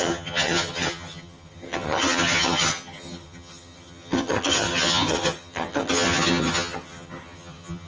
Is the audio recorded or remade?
remade